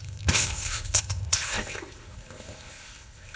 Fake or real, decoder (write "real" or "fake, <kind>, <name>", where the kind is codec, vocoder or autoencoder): fake, codec, ZipCodec